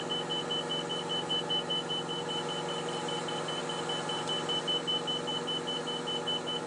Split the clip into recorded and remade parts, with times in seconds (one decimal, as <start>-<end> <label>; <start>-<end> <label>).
0.0-6.7 recorded